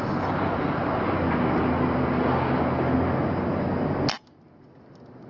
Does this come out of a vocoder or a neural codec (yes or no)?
no